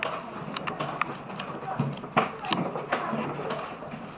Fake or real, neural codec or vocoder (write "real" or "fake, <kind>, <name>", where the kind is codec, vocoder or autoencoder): real